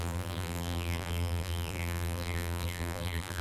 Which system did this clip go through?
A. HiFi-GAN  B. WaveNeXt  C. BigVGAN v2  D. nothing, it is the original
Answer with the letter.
C